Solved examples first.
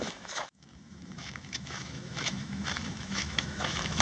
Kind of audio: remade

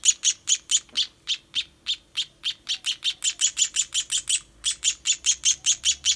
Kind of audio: recorded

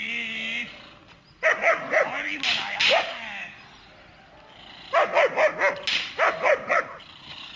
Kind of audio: recorded